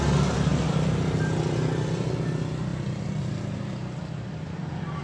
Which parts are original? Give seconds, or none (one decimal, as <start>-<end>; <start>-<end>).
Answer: 0.0-2.7